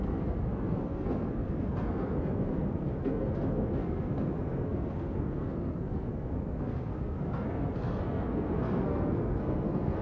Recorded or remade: remade